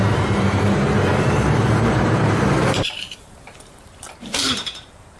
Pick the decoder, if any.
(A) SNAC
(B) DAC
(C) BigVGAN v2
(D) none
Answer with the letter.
C